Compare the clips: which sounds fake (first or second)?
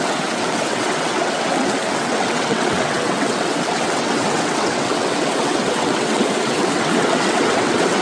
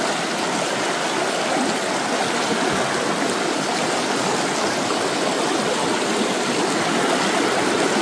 first